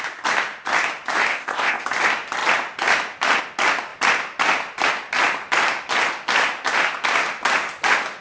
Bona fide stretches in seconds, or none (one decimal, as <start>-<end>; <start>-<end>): 0.0-1.3; 1.8-8.2